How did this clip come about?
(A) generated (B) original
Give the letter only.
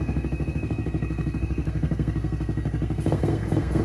A